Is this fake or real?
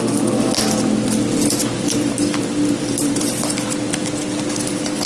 real